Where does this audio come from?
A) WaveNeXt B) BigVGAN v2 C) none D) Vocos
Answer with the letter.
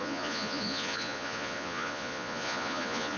D